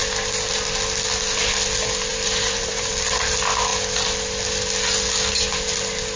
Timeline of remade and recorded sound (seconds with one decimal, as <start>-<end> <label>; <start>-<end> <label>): 0.0-2.1 recorded; 2.1-2.9 remade; 2.9-6.2 recorded